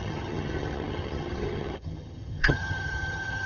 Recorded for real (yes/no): no